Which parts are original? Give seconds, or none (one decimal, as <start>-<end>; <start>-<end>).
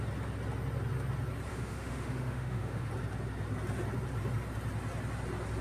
0.0-1.5; 2.9-5.6